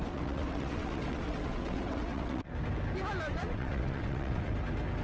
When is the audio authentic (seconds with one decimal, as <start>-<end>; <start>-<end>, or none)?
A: 2.5-3.3; 4.5-5.0